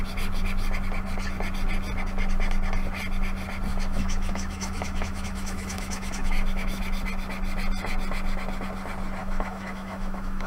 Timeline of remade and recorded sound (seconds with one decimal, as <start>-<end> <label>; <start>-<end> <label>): 0.0-3.7 recorded; 3.7-6.8 remade; 6.8-9.2 recorded; 9.2-10.5 remade